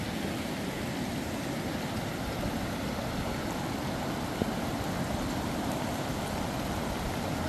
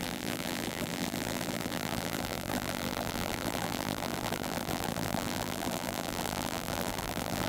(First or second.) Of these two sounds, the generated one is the second